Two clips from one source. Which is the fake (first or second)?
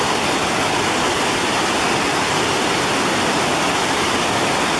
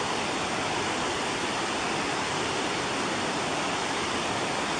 second